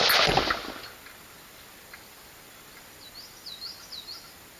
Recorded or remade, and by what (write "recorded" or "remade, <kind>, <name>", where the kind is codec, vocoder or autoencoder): recorded